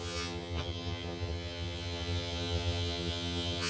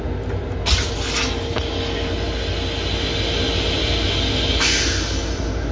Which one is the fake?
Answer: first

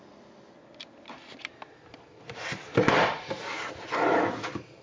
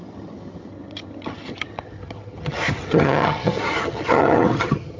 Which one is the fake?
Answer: second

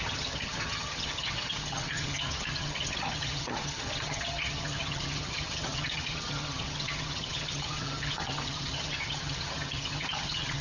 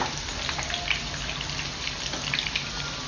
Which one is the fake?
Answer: first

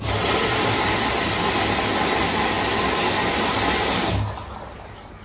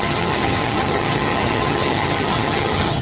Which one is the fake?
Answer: second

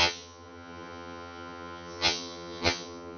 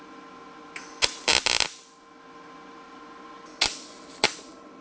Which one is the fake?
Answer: first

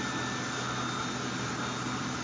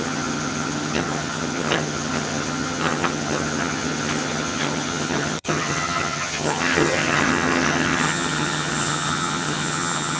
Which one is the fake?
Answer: second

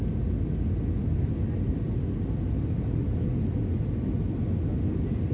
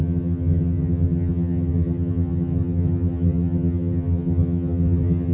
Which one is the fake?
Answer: second